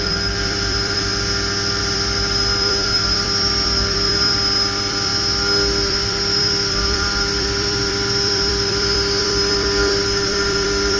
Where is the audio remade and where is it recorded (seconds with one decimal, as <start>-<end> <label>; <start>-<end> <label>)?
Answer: 0.0-1.1 remade; 1.1-1.8 recorded; 1.8-5.1 remade; 5.1-5.9 recorded; 5.9-11.0 remade

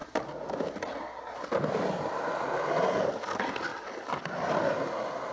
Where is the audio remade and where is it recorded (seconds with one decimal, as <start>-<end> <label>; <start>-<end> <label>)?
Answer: 0.0-5.3 recorded

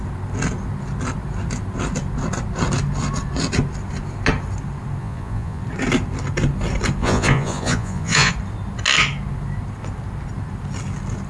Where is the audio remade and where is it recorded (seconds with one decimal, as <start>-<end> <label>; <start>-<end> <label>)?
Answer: 0.0-5.0 recorded; 5.0-5.6 remade; 5.6-7.0 recorded; 7.0-8.3 remade; 8.3-11.3 recorded

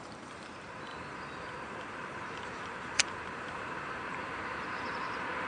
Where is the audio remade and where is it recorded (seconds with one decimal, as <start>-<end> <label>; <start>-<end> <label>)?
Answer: 0.0-5.5 remade

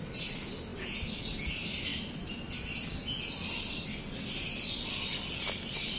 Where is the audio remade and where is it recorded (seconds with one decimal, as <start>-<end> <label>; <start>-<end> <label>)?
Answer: 0.0-6.0 recorded

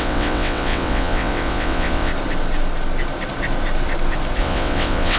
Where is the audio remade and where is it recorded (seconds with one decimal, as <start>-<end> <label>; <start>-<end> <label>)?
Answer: 0.0-2.1 remade; 2.1-4.4 recorded; 4.4-5.2 remade

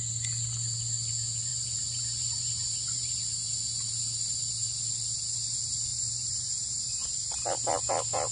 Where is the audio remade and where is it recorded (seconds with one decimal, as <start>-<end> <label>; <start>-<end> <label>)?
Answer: 0.0-1.5 recorded; 1.5-3.1 remade; 3.1-5.9 recorded; 5.9-6.5 remade; 6.5-8.3 recorded